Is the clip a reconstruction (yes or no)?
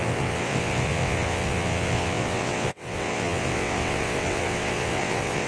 yes